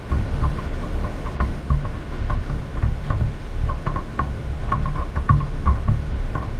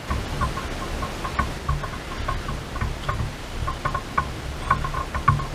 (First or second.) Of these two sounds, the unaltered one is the second